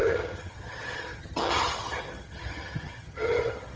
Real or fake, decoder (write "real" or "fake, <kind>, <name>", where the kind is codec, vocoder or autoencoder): fake, vocoder, HiFi-GAN